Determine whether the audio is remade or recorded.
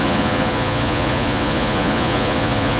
remade